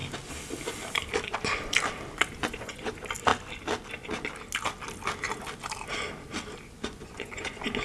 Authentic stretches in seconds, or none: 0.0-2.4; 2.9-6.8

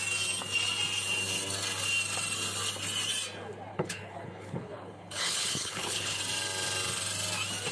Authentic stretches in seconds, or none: 0.0-3.7; 6.2-7.7